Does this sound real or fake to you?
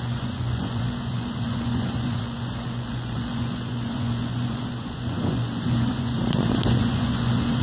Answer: fake